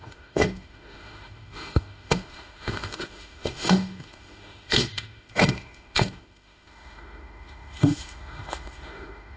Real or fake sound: fake